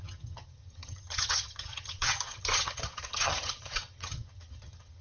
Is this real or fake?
fake